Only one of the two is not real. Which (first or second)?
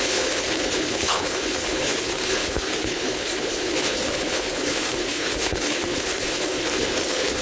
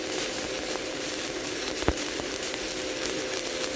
first